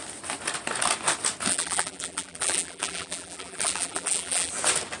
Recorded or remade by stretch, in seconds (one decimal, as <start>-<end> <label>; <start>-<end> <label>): 0.0-1.5 recorded; 1.5-4.5 remade; 4.5-5.0 recorded